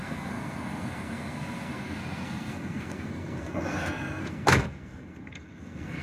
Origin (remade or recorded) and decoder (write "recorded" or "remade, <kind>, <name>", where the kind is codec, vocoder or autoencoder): remade, codec, SNAC